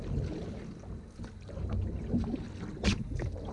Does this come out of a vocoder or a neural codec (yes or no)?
no